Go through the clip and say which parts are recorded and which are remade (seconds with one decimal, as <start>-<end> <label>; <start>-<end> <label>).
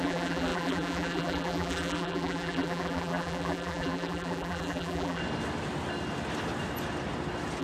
0.0-5.2 remade; 5.2-7.6 recorded